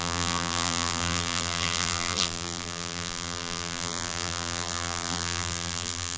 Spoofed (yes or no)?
yes